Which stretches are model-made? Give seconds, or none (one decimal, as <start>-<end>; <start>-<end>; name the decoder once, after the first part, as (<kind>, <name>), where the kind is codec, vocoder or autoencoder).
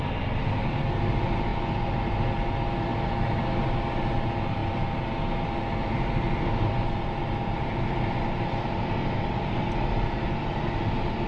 none